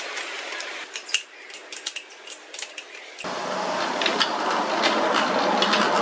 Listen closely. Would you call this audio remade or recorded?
recorded